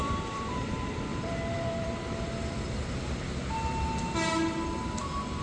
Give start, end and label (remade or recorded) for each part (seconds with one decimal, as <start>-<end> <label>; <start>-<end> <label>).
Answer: 0.0-2.9 remade; 2.9-5.4 recorded